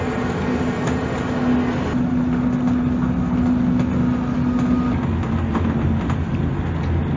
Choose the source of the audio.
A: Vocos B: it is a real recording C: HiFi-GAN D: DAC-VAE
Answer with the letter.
B